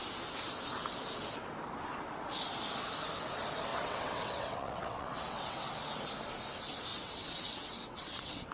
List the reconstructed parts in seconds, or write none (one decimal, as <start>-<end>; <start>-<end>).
3.7-5.7; 6.9-8.5